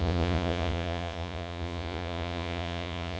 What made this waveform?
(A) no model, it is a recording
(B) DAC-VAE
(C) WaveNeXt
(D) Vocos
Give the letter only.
D